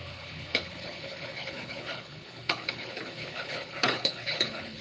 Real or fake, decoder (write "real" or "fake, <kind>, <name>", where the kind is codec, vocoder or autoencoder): fake, codec, HILCodec